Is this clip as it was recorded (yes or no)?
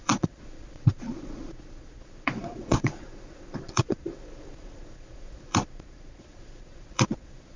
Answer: no